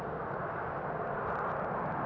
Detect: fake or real real